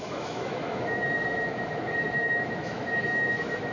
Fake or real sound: fake